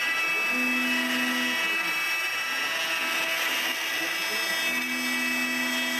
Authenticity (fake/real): real